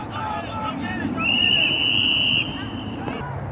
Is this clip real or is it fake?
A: fake